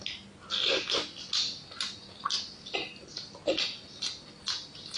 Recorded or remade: recorded